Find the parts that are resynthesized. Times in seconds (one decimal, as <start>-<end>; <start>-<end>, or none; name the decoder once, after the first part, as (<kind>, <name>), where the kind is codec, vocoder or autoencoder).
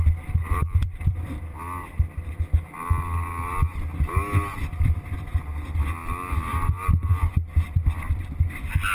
0.4-1.3 (vocoder, BigVGAN v2); 6.5-7.3